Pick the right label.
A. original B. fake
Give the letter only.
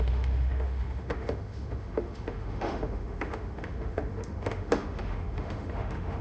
B